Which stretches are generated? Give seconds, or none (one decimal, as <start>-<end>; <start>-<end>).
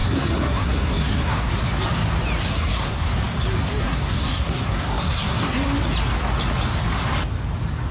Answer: 0.0-1.6; 2.5-3.1; 3.8-5.5